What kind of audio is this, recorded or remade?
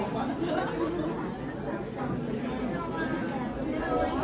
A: recorded